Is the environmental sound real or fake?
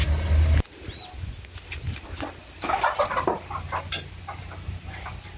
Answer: real